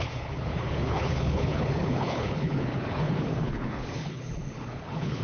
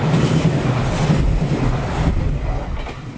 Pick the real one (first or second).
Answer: second